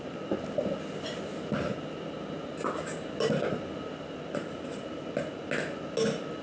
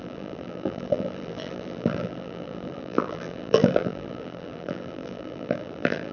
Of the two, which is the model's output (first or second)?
second